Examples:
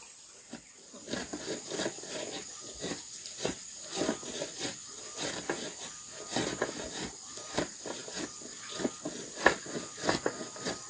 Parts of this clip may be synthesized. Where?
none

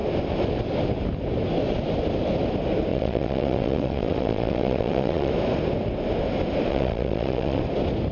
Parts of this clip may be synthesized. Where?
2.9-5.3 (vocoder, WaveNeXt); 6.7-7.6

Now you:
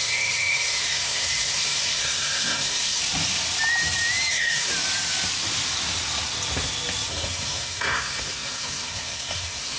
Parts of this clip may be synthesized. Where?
0.0-3.0 (codec, SNAC); 4.3-4.7; 7.1-9.8

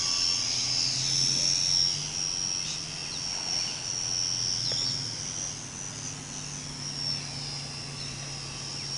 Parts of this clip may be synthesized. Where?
none

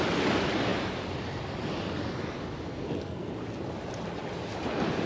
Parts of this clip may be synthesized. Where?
2.7-3.3 (codec, SNAC)